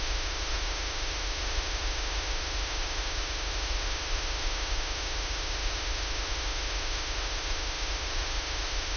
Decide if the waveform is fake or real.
fake